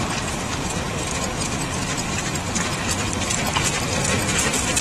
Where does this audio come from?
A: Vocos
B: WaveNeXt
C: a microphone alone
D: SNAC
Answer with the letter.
C